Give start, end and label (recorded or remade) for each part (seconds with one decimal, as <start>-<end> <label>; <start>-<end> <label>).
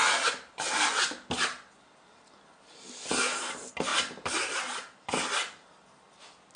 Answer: 0.0-6.6 recorded